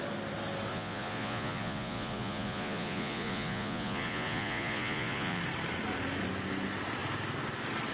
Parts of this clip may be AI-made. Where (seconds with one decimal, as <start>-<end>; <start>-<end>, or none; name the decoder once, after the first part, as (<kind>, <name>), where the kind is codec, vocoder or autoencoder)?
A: 0.7-5.4 (vocoder, Vocos)